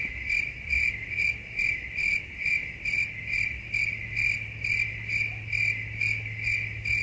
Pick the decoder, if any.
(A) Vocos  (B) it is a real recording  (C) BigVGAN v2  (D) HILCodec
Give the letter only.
B